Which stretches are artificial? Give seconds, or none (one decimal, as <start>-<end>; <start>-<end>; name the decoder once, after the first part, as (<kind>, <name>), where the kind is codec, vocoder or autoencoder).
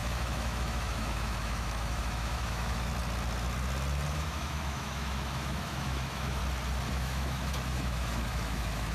0.0-2.9 (autoencoder, DAC-VAE); 4.1-6.4; 6.9-8.9